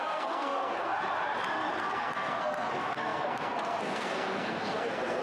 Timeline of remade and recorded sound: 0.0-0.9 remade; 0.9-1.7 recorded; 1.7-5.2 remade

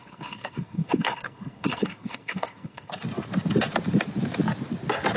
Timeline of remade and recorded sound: 0.0-2.9 remade; 2.9-5.2 recorded

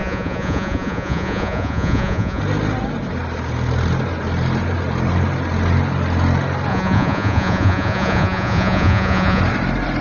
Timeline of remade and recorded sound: 0.0-2.4 remade; 2.4-6.7 recorded; 6.7-9.4 remade; 9.4-10.0 recorded

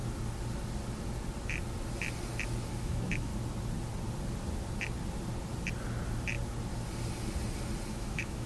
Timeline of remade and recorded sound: 0.0-2.8 recorded; 2.8-3.3 remade; 3.3-7.9 recorded; 7.9-8.5 remade

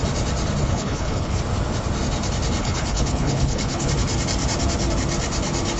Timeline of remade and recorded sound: 0.0-0.6 recorded; 0.6-1.4 remade; 1.4-2.6 recorded; 2.6-3.9 remade; 3.9-5.8 recorded

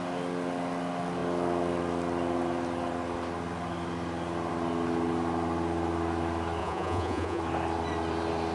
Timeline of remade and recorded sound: 0.0-6.6 recorded; 6.6-7.4 remade; 7.4-8.5 recorded

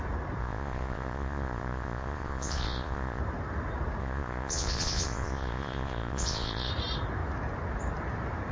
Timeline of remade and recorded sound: 0.0-0.4 recorded; 0.4-3.2 remade; 3.2-4.0 recorded; 4.0-6.7 remade; 6.7-8.5 recorded

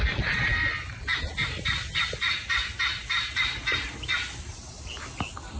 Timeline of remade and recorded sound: 0.0-5.6 recorded